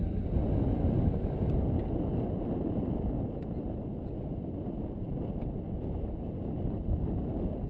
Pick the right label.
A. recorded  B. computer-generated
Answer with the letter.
A